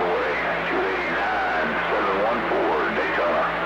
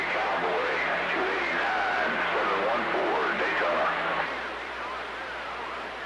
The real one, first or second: first